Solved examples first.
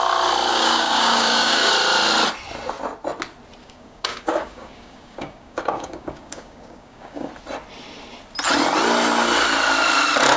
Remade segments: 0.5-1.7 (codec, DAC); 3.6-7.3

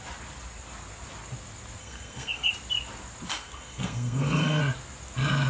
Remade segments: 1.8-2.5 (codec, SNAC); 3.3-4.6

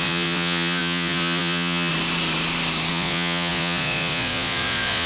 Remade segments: 0.0-1.9 (vocoder, Vocos); 2.9-5.1